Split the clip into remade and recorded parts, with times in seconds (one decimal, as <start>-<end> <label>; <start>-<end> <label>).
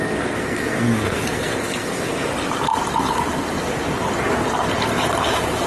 0.0-2.3 remade; 2.3-5.7 recorded